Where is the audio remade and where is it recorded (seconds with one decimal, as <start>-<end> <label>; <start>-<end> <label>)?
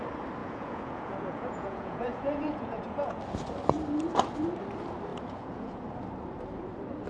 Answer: 0.0-0.4 recorded; 0.4-3.2 remade; 3.2-5.1 recorded; 5.1-5.8 remade; 5.8-7.1 recorded